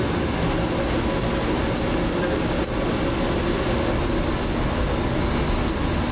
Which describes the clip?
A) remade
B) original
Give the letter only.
B